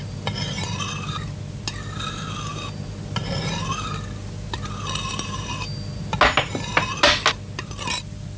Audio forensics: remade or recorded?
recorded